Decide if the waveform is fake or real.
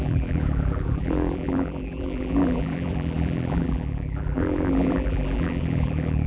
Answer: fake